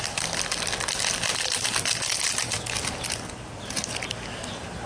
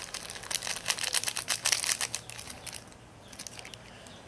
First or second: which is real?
second